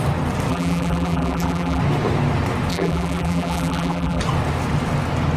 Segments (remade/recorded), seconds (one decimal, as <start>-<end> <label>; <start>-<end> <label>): 0.0-0.5 recorded; 0.5-1.8 remade; 1.8-2.7 recorded; 2.7-4.2 remade; 4.2-5.4 recorded